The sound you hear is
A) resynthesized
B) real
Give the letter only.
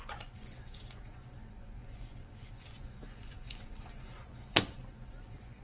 A